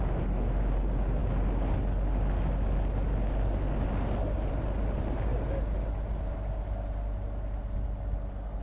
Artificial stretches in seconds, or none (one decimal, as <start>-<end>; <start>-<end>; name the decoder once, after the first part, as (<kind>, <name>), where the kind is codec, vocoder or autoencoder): none